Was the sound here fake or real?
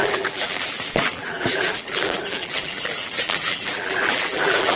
fake